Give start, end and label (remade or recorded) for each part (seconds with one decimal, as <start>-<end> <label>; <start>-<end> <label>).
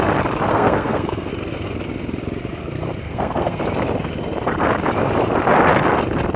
0.0-0.5 recorded; 0.5-1.3 remade; 1.3-3.0 recorded; 3.0-3.6 remade; 3.6-6.4 recorded